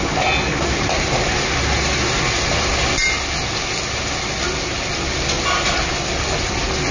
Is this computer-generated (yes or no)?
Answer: no